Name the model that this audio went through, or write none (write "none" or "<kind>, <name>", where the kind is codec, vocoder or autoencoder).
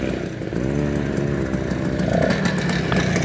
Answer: none